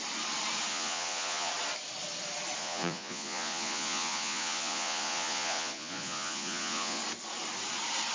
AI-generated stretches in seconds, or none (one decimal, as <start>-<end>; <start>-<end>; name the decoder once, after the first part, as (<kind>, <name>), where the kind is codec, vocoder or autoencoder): 0.7-1.5 (vocoder, Vocos); 2.6-7.0